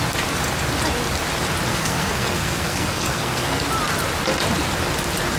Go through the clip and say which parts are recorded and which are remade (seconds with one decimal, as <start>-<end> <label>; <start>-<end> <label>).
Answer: 0.0-1.7 recorded; 1.7-3.7 remade; 3.7-5.4 recorded